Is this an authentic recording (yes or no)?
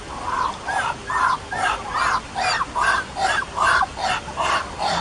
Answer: yes